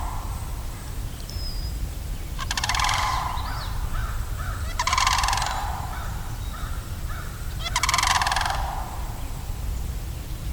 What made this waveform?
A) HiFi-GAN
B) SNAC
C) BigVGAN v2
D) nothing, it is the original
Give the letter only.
C